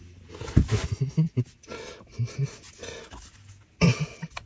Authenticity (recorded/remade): recorded